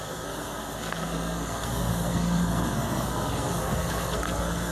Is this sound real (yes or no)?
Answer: no